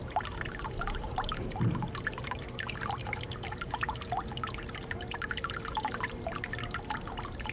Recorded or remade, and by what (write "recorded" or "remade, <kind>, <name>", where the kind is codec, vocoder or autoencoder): remade, vocoder, BigVGAN v2